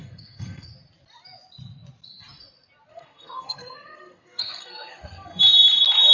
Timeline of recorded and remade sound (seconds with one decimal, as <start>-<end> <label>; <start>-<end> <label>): 0.0-0.7 remade; 0.7-2.9 recorded; 2.9-5.4 remade; 5.4-6.1 recorded

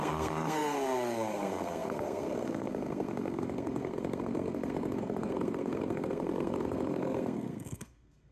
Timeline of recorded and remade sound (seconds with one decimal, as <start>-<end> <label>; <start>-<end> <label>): 0.0-8.3 remade

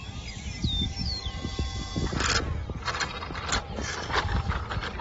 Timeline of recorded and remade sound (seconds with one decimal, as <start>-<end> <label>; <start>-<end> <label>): 0.0-0.8 recorded; 0.8-1.4 remade; 1.4-4.2 recorded; 4.2-5.0 remade

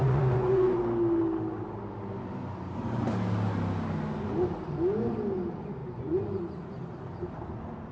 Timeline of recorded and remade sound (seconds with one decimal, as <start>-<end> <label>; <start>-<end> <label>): 0.0-0.8 remade; 0.8-5.8 recorded; 5.8-6.4 remade; 6.4-7.9 recorded

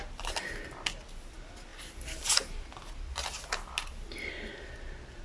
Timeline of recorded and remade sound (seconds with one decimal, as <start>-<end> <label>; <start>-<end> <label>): 0.0-5.2 recorded

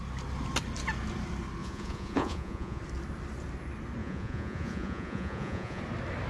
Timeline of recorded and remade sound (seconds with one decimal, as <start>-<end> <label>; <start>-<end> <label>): 0.0-1.6 recorded; 1.6-2.8 remade; 2.8-4.0 recorded; 4.0-5.8 remade; 5.8-6.3 recorded